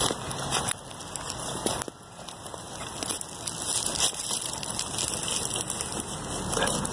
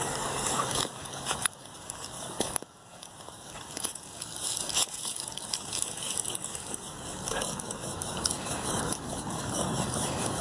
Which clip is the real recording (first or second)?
first